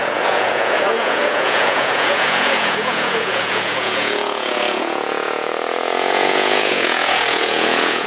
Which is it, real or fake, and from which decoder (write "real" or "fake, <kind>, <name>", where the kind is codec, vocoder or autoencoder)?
fake, vocoder, Vocos